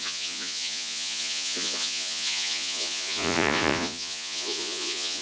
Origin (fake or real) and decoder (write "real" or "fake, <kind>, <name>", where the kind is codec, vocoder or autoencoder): fake, vocoder, Vocos